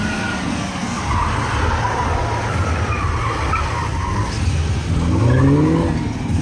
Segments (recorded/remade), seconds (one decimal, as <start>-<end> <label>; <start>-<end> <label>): 0.0-6.4 recorded